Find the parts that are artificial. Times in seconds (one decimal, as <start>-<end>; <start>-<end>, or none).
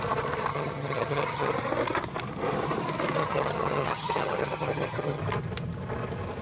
0.5-1.5; 3.2-5.2